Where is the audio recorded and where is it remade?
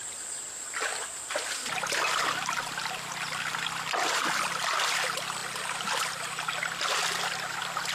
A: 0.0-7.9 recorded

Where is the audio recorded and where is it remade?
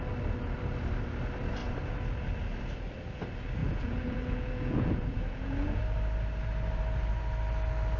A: 0.0-3.6 recorded; 3.6-5.8 remade; 5.8-8.0 recorded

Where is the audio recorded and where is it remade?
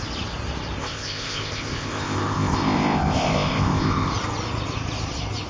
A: 0.0-0.8 recorded; 0.8-4.1 remade; 4.1-5.5 recorded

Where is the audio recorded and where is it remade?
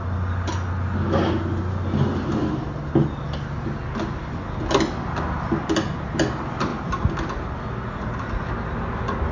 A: 0.0-9.3 recorded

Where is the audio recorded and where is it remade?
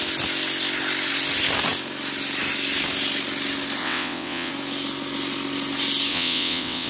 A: 0.0-3.8 recorded; 3.8-4.5 remade; 4.5-6.1 recorded; 6.1-6.9 remade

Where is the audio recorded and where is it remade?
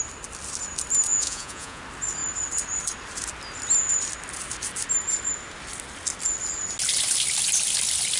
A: 0.0-1.1 recorded; 1.1-1.8 remade; 1.8-8.2 recorded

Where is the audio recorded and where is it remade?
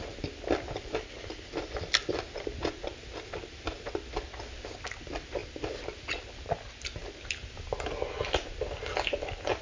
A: 0.0-9.6 recorded